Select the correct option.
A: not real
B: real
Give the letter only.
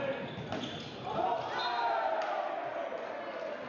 B